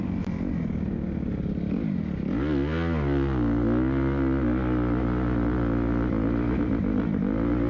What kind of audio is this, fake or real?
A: real